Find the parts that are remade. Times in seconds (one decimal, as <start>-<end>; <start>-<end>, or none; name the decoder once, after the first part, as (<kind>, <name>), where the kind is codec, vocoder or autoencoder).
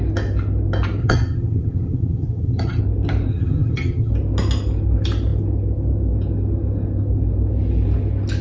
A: 1.0-2.8 (vocoder, HiFi-GAN); 3.3-4.1